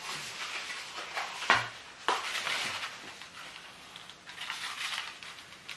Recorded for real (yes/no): yes